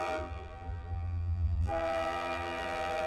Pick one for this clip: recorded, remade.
remade